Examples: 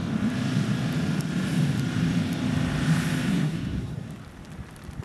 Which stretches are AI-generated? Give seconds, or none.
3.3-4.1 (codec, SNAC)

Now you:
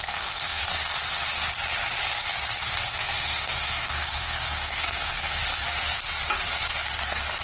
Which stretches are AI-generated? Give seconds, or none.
0.0-0.6 (codec, SNAC); 2.9-5.4

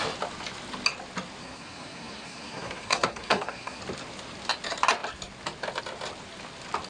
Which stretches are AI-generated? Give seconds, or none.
1.4-3.8 (codec, SNAC)